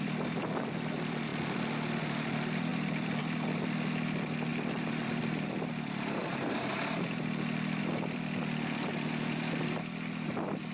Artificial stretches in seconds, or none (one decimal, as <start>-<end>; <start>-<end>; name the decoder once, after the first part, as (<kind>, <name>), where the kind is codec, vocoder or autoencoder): 0.0-1.3 (vocoder, BigVGAN v2); 2.0-6.2; 7.8-10.7